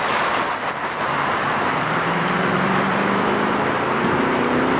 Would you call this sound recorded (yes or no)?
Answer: no